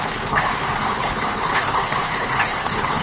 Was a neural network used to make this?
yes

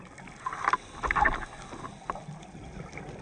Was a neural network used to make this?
no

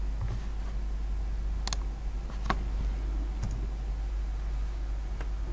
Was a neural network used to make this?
no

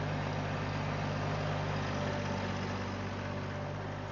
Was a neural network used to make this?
no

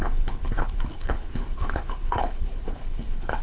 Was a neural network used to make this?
yes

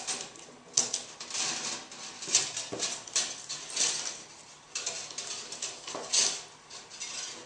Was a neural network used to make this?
no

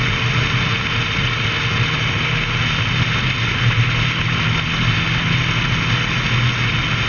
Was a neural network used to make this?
no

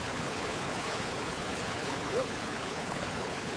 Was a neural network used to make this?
yes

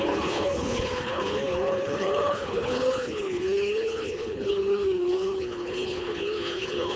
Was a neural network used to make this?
yes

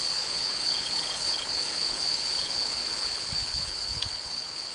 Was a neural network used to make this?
yes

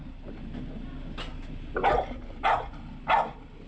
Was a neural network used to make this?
no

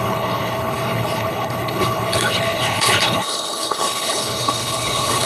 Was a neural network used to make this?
yes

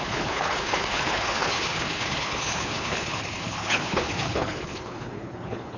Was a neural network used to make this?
yes